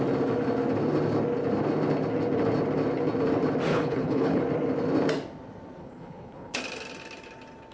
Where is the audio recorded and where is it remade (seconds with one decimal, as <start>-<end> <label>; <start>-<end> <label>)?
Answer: 0.0-3.7 recorded; 3.7-4.4 remade; 4.4-5.8 recorded; 5.8-6.6 remade; 6.6-7.7 recorded